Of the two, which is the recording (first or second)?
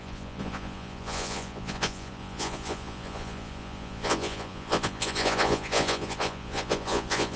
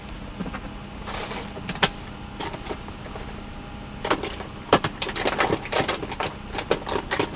second